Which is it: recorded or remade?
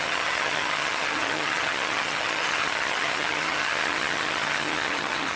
remade